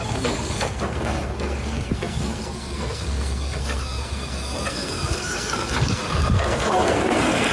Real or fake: fake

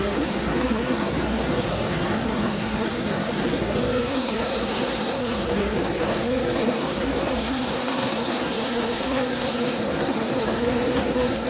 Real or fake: fake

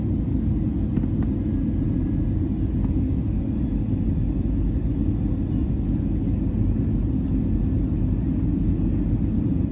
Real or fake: real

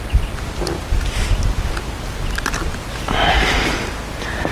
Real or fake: real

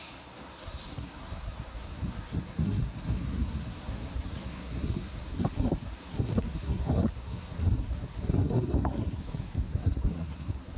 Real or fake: fake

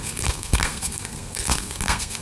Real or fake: fake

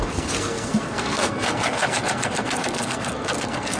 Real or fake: fake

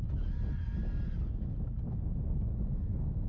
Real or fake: real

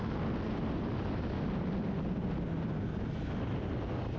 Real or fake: real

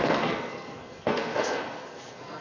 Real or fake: fake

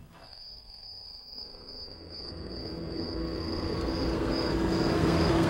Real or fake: fake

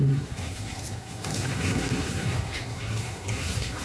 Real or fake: fake